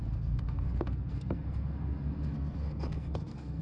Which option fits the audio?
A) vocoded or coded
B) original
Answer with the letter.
A